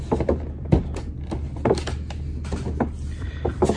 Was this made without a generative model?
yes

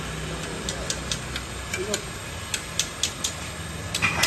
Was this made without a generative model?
yes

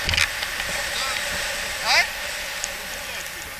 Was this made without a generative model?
yes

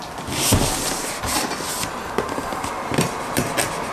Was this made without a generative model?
yes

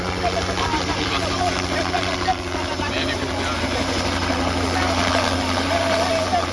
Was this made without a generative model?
no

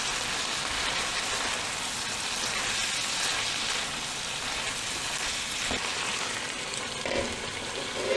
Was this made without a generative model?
yes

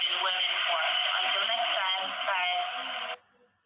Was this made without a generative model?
yes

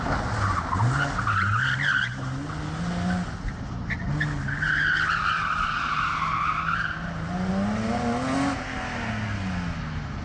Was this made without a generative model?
yes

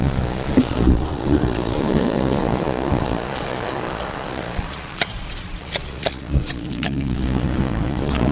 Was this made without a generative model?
no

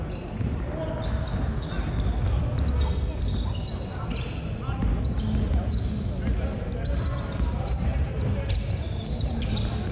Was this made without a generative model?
yes